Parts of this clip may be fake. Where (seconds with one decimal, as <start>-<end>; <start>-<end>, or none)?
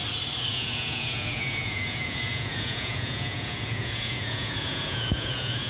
0.5-5.7